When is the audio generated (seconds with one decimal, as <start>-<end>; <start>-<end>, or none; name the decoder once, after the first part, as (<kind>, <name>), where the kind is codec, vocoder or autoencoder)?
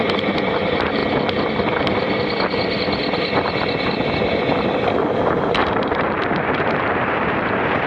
0.0-1.0 (vocoder, BigVGAN v2); 5.1-7.9